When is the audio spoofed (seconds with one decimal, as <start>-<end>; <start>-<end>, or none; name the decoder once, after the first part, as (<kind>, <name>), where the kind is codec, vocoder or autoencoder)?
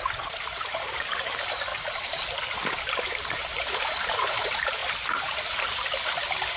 0.0-1.7 (vocoder, BigVGAN v2); 3.1-4.8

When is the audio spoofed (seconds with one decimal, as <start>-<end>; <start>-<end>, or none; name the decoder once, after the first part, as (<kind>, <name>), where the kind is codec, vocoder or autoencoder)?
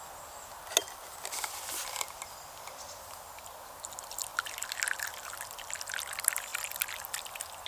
4.3-5.1 (vocoder, BigVGAN v2)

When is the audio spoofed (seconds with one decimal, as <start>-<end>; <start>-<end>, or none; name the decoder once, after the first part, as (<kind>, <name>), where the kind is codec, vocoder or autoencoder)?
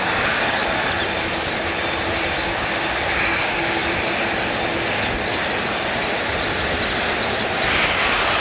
0.0-0.6 (codec, DAC); 2.9-3.8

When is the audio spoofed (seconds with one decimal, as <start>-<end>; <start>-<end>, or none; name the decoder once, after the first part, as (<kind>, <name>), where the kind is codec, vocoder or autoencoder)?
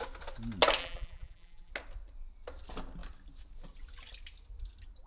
0.8-1.7 (vocoder, BigVGAN v2)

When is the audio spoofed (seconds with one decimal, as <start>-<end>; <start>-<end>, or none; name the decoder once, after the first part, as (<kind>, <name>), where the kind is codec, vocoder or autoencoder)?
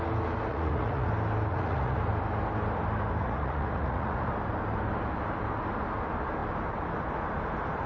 0.5-1.1 (vocoder, Vocos); 1.5-2.0; 3.2-4.3